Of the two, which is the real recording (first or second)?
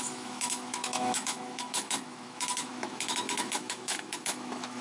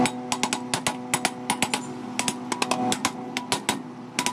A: second